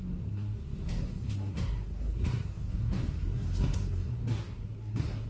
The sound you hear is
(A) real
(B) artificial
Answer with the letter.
B